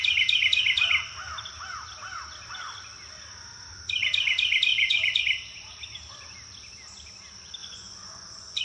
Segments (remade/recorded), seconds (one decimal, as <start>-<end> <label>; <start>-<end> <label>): 0.0-4.7 recorded; 4.7-5.2 remade; 5.2-7.6 recorded; 7.6-8.6 remade